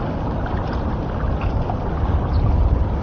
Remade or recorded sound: recorded